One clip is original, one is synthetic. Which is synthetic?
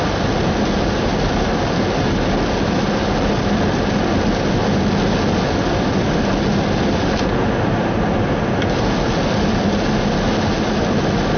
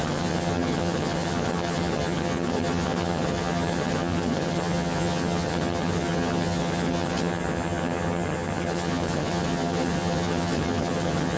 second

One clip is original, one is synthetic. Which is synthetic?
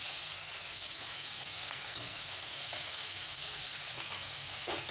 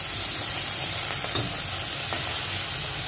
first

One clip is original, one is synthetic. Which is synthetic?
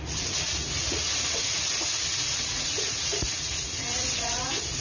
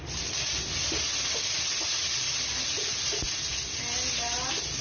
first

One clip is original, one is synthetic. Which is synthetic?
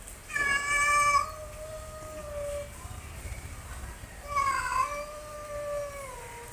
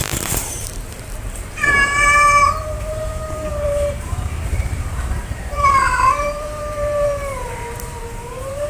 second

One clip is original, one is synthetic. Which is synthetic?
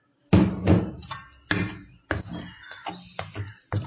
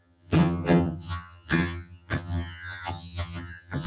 second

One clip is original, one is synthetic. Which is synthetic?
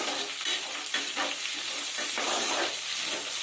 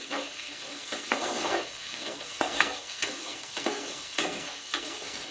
second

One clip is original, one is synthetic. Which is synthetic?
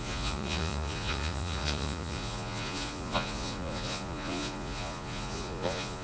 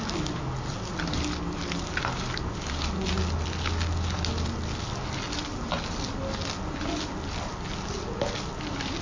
first